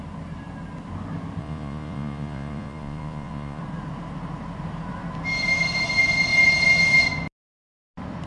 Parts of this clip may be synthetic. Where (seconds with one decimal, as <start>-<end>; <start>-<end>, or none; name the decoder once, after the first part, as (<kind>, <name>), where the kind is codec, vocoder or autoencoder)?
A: 1.4-3.6 (vocoder, Vocos)